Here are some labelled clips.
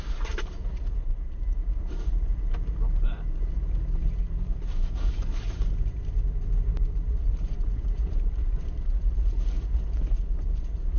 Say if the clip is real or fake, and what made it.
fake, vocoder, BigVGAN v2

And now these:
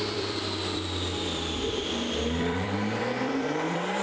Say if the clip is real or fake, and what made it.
fake, vocoder, BigVGAN v2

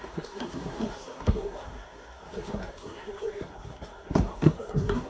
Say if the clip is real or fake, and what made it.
fake, codec, SNAC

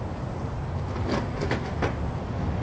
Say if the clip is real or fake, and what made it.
real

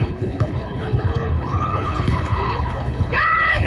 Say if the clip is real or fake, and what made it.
fake, codec, HILCodec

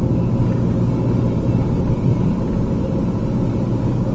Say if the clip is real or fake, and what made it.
real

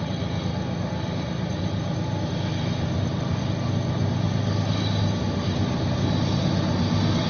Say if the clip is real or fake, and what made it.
real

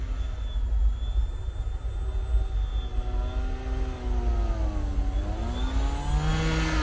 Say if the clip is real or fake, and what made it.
real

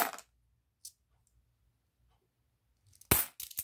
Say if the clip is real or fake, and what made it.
real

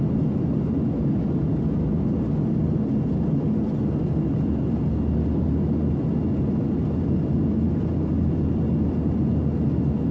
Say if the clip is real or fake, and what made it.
real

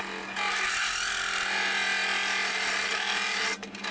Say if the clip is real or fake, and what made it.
real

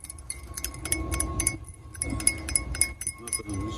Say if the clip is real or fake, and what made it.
real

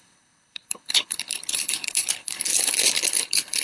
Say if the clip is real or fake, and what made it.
fake, codec, HILCodec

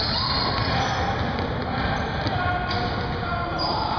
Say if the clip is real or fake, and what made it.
real